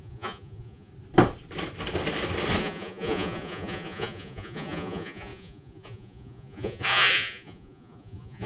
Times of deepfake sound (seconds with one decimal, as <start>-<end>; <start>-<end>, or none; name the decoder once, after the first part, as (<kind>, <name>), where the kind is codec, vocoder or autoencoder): 0.0-0.9 (vocoder, Vocos); 2.6-8.5